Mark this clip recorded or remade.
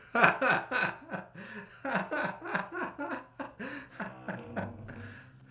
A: recorded